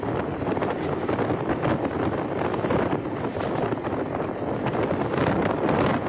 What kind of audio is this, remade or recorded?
recorded